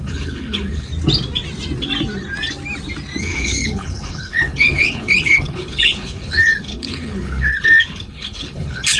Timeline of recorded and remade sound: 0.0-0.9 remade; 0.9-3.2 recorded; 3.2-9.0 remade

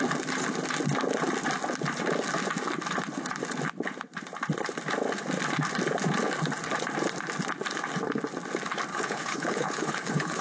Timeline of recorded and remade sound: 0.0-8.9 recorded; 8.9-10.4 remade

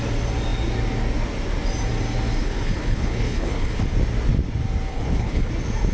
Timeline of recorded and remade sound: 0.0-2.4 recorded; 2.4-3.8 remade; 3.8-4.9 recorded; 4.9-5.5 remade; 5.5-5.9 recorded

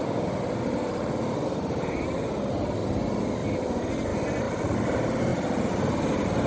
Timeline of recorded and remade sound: 0.0-6.5 recorded

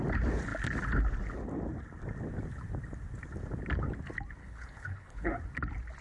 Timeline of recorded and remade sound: 0.0-4.4 recorded; 4.4-5.3 remade; 5.3-6.0 recorded

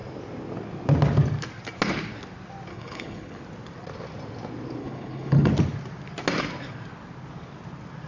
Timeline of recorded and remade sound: 0.0-2.7 recorded; 2.7-3.4 remade; 3.4-4.8 recorded; 4.8-5.5 remade; 5.5-8.1 recorded